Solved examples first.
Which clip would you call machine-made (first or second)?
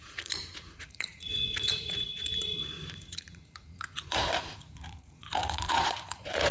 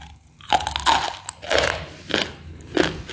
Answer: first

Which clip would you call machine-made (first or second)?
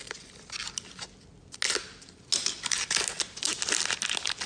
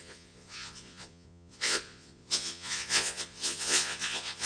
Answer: second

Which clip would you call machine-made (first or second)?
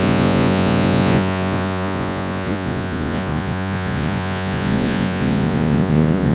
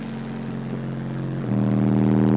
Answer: first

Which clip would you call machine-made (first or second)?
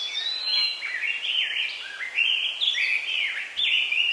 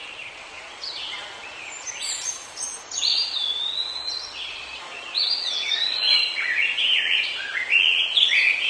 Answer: second